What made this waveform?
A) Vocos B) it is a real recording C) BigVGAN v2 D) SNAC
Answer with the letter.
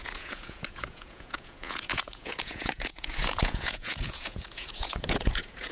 A